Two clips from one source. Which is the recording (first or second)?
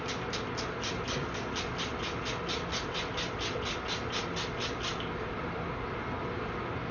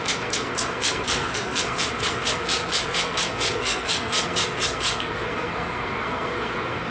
first